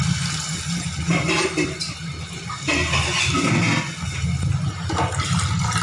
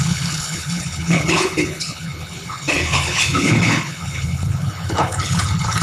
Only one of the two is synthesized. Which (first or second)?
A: second